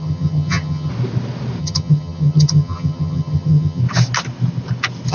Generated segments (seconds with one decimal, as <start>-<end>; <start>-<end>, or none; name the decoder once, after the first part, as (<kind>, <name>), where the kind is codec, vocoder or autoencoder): 0.0-0.9 (vocoder, HiFi-GAN); 1.6-3.8